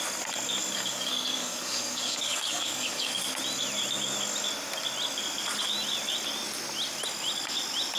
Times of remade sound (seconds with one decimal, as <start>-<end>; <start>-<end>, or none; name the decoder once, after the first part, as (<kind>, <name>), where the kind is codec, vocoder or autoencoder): 0.6-3.2 (codec, DAC)